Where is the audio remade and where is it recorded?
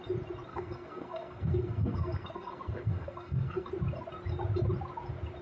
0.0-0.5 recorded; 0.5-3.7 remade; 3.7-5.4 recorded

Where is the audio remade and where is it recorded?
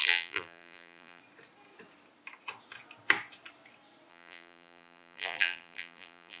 0.0-1.2 remade; 1.2-4.1 recorded; 4.1-6.4 remade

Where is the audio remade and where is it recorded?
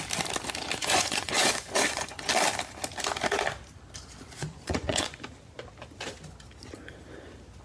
0.0-0.8 recorded; 0.8-2.3 remade; 2.3-4.4 recorded; 4.4-5.2 remade; 5.2-7.6 recorded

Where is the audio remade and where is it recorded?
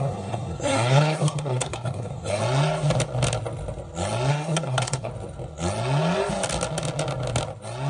0.0-2.4 remade; 2.4-4.3 recorded; 4.3-5.1 remade; 5.1-7.9 recorded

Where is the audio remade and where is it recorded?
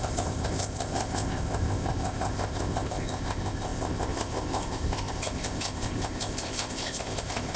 0.0-7.6 remade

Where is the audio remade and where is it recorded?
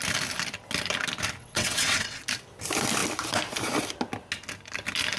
0.0-1.4 recorded; 1.4-2.2 remade; 2.2-5.2 recorded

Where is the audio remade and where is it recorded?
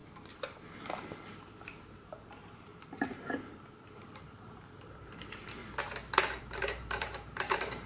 0.0-1.8 recorded; 1.8-2.7 remade; 2.7-4.2 recorded; 4.2-5.6 remade; 5.6-6.4 recorded; 6.4-7.9 remade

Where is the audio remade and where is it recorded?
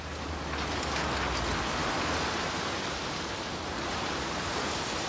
0.0-1.8 recorded; 1.8-4.5 remade; 4.5-5.1 recorded